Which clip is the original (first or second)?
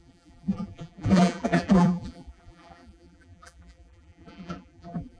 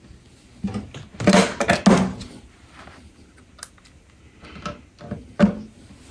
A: second